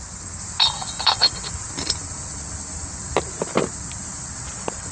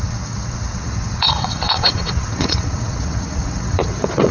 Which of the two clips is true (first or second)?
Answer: first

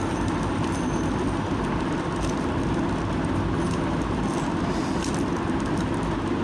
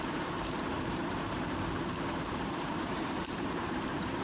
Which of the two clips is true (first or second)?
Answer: first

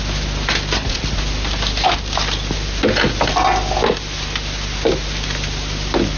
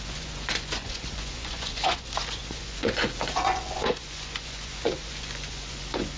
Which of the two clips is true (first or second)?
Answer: first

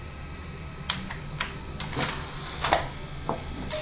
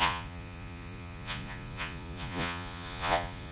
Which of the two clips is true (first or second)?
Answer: first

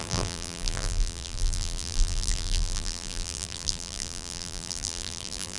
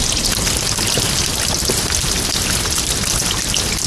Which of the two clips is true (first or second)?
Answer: second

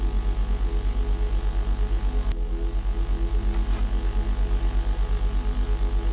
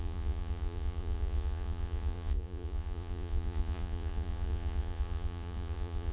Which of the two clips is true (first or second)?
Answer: first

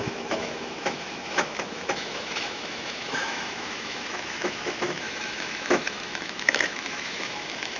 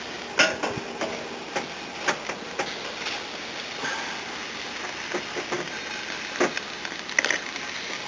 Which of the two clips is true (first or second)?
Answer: second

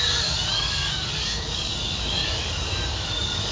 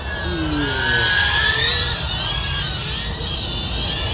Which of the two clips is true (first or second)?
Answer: second